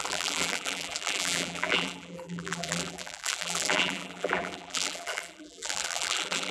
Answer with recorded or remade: remade